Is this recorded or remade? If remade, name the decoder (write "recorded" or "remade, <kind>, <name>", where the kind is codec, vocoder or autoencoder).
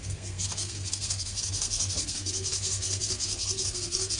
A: remade, codec, SNAC